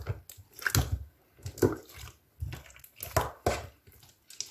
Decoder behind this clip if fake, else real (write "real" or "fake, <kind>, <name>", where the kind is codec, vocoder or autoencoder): real